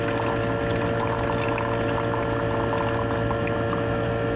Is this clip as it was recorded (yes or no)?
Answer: yes